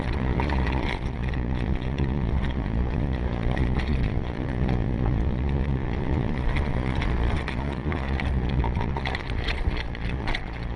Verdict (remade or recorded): remade